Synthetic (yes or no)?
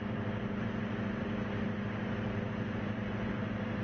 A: no